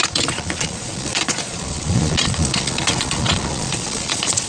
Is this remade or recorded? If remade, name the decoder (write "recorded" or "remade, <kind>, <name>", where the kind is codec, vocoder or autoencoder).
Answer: remade, vocoder, Vocos